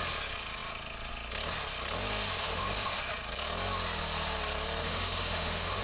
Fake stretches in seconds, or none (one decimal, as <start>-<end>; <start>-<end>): 2.4-3.0; 4.8-5.8